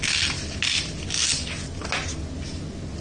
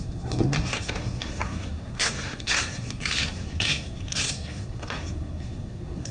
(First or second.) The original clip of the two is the first